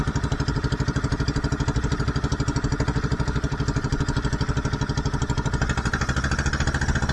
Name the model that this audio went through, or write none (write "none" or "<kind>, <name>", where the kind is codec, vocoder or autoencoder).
none